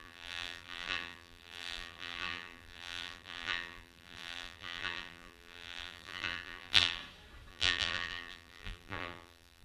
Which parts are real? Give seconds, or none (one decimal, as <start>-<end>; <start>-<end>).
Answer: 7.0-7.5

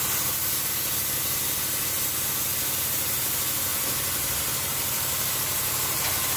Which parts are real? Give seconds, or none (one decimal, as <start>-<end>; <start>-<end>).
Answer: 0.0-3.7; 5.3-6.4

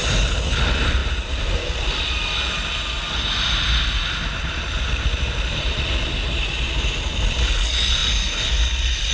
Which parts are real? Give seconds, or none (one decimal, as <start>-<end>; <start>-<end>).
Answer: 0.0-9.1

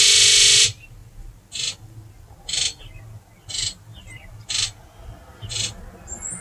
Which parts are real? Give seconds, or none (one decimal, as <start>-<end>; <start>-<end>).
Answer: 0.0-6.4

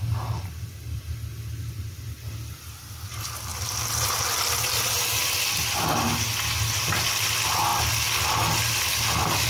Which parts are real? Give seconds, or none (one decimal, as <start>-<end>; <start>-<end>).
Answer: 0.0-9.5

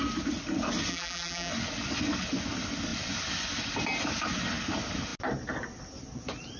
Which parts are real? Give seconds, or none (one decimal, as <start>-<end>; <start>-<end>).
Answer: 0.0-0.9; 1.5-6.6